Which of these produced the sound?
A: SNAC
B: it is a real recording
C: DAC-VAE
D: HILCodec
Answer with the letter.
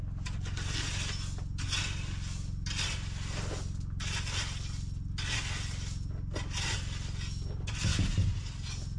B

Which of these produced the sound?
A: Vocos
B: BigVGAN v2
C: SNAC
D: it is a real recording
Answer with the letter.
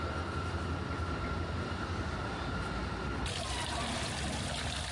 D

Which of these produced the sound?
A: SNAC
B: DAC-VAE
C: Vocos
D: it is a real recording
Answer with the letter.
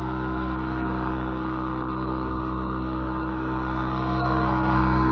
A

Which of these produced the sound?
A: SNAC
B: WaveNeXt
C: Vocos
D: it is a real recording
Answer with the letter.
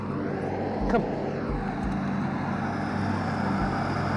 D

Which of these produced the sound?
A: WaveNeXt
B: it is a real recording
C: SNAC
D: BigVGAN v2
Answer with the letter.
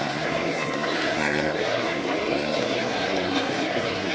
C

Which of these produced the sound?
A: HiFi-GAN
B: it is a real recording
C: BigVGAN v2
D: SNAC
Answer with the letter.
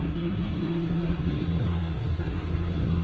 D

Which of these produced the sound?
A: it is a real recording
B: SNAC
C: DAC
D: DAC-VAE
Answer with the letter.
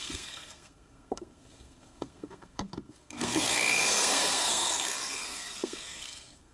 B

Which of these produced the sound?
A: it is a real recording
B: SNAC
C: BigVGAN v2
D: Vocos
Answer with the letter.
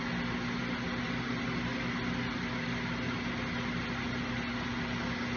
A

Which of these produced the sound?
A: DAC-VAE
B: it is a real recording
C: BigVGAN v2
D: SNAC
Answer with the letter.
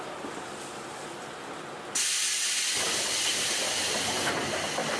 B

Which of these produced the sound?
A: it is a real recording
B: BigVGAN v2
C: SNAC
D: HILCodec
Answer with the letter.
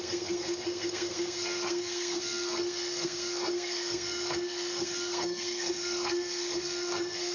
C